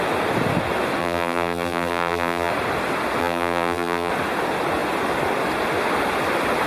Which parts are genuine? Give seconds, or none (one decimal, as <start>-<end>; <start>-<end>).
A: 0.0-1.0; 2.5-3.2; 4.1-6.7